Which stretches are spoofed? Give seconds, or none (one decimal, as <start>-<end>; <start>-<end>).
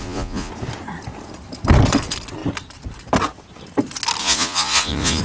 0.0-0.5; 4.2-5.2